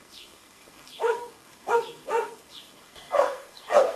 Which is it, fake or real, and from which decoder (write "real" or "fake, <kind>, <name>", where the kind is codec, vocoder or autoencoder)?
fake, codec, SNAC